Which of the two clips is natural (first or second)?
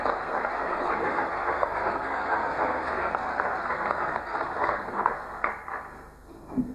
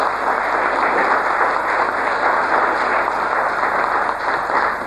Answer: second